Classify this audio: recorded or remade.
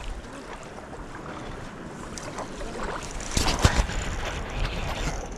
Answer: recorded